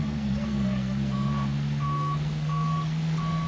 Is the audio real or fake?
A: fake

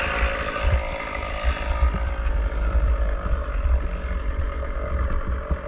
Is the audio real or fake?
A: real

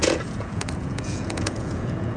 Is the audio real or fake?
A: fake